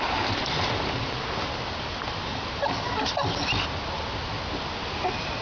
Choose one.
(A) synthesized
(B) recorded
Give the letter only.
B